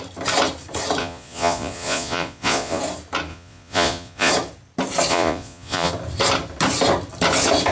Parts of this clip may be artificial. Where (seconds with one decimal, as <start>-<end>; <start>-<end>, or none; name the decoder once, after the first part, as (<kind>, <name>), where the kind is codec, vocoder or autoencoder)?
1.0-2.8 (vocoder, Vocos); 3.3-4.3; 5.1-5.9